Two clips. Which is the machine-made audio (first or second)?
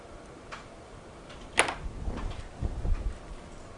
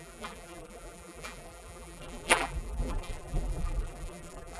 second